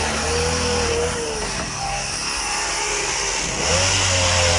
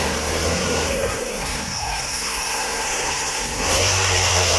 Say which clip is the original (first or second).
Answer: first